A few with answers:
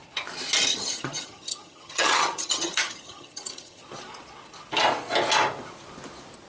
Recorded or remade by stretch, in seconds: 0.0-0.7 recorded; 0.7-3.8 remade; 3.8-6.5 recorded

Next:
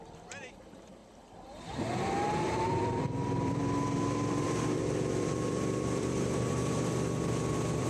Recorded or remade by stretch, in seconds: 0.0-1.0 remade; 1.0-2.3 recorded; 2.3-7.9 remade

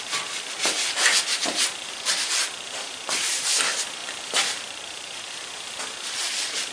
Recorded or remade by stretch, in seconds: 0.0-1.3 recorded; 1.3-1.9 remade; 1.9-2.4 recorded; 2.4-3.3 remade; 3.3-4.0 recorded; 4.0-5.5 remade; 5.5-6.7 recorded

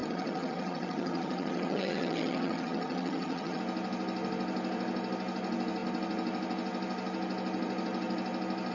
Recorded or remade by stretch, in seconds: 0.0-3.6 remade; 3.6-8.7 recorded